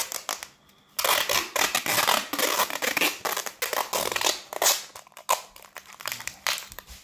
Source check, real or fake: real